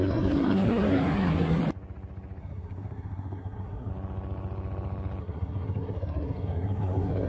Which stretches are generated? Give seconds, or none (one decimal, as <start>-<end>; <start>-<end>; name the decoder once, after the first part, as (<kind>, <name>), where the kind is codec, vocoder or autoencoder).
0.0-1.6 (codec, SNAC); 2.4-3.9; 5.2-7.3